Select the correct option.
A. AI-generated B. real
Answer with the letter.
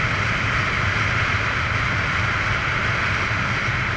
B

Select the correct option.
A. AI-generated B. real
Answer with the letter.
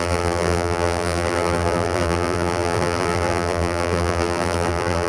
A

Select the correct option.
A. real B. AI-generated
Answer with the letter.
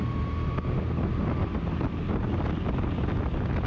A